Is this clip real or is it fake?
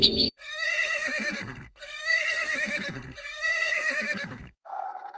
fake